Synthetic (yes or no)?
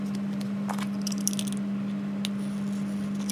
no